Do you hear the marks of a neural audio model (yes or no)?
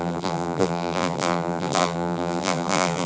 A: yes